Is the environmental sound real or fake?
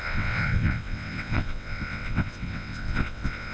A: fake